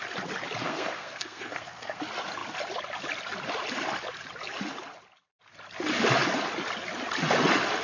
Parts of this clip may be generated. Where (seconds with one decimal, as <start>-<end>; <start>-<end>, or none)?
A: 0.6-2.0